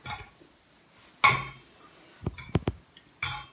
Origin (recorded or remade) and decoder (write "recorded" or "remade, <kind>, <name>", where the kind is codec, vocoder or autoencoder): recorded